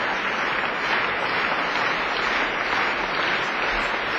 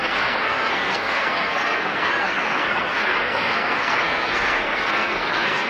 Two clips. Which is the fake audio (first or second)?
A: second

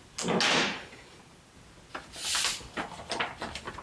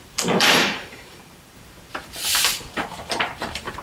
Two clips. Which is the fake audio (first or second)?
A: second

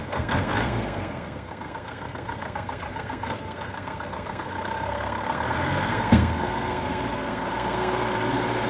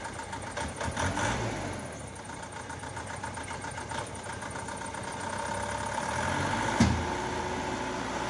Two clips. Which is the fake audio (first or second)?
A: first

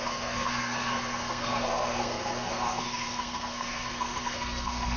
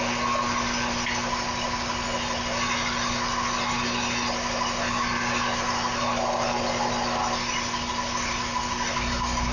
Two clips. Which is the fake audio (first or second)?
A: first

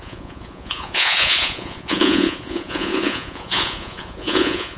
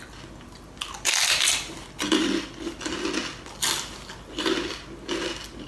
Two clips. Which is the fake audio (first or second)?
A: first